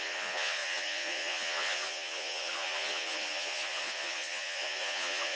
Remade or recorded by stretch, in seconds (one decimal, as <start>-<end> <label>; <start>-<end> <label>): 0.0-5.4 remade